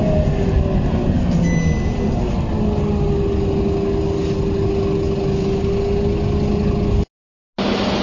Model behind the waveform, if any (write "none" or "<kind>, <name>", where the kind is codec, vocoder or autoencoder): none